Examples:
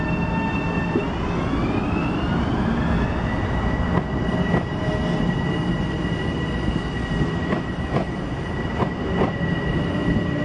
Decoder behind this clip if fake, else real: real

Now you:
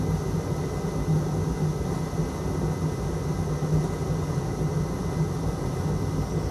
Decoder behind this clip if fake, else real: real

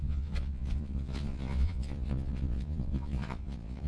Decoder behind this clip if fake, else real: fake, vocoder, Vocos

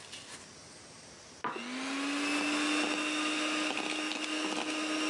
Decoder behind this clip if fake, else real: real